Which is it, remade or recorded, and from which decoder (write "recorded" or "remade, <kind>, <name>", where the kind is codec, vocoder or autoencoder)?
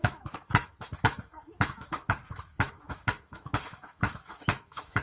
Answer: remade, autoencoder, DAC-VAE